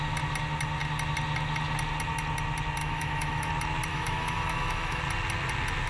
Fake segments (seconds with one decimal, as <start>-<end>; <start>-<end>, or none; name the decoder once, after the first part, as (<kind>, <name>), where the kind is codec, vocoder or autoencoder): 2.8-3.5 (autoencoder, DAC-VAE); 3.9-5.0